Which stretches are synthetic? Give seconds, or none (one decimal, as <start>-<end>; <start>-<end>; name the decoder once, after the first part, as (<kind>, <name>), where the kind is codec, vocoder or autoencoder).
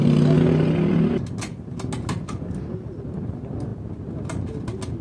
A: none